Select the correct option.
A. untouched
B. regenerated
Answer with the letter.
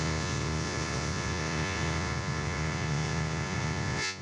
B